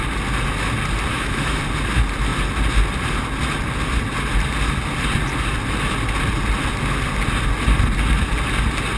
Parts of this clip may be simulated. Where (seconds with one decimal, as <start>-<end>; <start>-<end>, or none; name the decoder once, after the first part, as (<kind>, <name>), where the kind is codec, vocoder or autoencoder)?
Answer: 1.1-1.6 (autoencoder, DAC-VAE)